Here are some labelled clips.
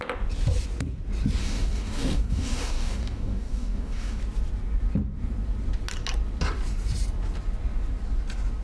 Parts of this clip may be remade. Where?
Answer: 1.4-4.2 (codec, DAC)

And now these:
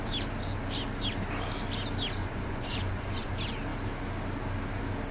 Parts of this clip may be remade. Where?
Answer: 2.2-3.3 (vocoder, Vocos)

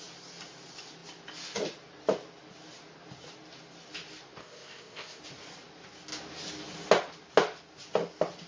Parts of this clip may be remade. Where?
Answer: 4.4-5.2 (codec, ZipCodec)

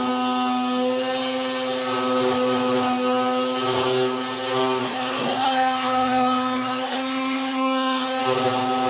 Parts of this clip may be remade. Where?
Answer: 4.8-8.2 (codec, SNAC)

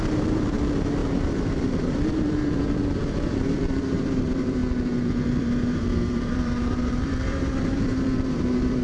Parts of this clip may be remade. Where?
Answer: 0.0-4.6 (vocoder, BigVGAN v2); 5.4-8.8

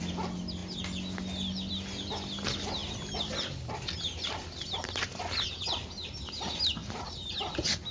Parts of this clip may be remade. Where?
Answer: 6.8-7.4 (vocoder, BigVGAN v2)